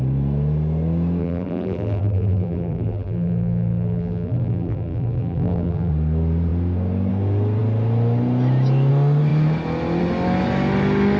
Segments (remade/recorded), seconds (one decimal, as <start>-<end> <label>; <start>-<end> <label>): 0.0-1.2 recorded; 1.2-5.9 remade; 5.9-11.2 recorded